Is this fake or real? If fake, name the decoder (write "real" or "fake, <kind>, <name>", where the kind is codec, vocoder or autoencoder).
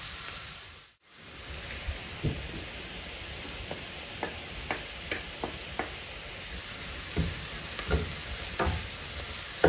real